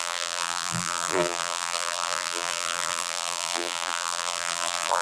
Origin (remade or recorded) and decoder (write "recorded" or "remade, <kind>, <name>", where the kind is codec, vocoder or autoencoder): remade, vocoder, BigVGAN v2